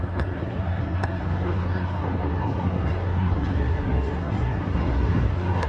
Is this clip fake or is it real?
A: fake